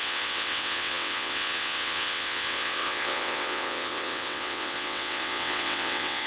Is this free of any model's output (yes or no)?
no